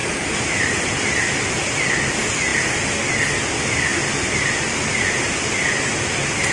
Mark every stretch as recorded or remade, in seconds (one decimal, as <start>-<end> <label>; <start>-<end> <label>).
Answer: 0.0-6.5 recorded